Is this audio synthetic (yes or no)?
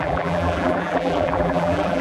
yes